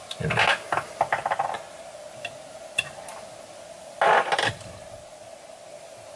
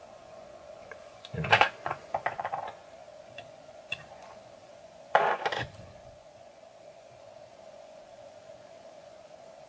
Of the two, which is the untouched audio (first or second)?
first